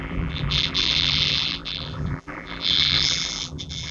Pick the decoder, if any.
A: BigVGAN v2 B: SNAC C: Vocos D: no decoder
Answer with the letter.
A